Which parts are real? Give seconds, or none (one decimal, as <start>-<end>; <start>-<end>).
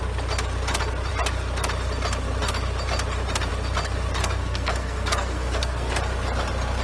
0.0-4.2; 5.9-6.8